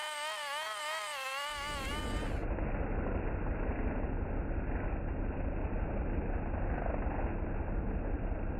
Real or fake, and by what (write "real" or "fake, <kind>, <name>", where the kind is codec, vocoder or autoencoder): real